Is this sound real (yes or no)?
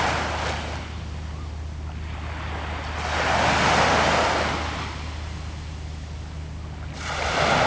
yes